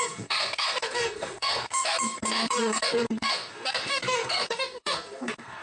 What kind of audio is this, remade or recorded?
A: remade